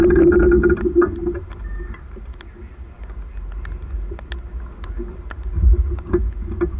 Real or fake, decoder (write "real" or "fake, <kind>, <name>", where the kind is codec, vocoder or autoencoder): real